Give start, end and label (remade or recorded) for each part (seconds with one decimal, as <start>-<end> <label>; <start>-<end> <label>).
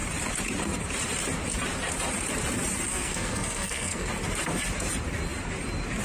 0.0-2.9 recorded; 2.9-4.1 remade; 4.1-6.0 recorded